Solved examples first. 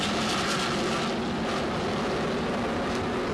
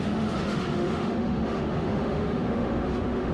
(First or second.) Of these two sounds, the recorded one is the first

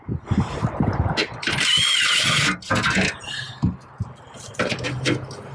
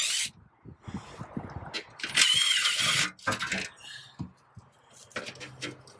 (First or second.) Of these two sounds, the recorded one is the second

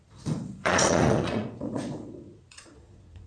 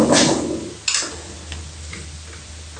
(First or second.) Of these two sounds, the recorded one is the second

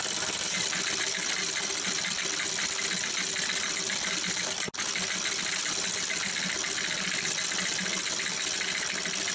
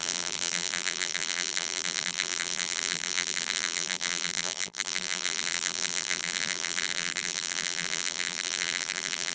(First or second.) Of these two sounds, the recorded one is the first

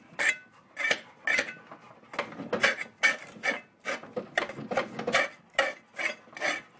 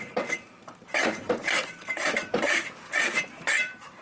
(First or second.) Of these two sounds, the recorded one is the first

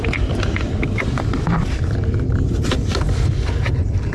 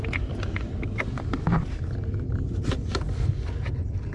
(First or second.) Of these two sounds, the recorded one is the second